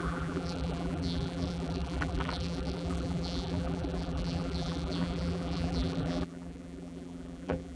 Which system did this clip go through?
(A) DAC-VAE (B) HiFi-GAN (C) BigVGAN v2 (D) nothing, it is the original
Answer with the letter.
C